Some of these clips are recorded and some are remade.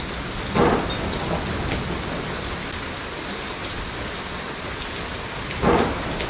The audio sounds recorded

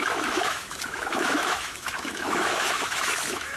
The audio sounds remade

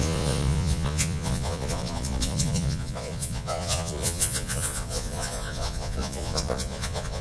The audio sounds remade